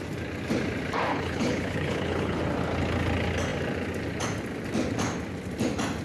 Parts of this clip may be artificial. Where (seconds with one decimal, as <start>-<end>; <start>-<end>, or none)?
1.1-2.4